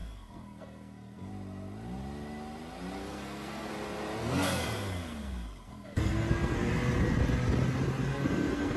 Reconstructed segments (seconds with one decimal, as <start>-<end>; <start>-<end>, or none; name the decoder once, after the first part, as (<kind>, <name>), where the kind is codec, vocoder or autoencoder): 0.0-1.3 (codec, SNAC); 3.0-3.7; 4.2-6.7; 8.0-8.8